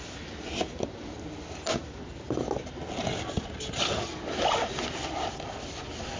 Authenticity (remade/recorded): recorded